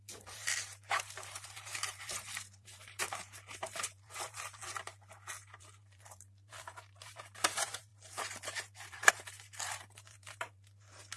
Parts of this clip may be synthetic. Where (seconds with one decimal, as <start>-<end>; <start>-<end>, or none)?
0.0-4.6; 5.6-11.2